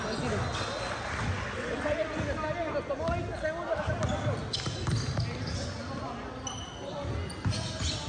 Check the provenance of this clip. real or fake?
real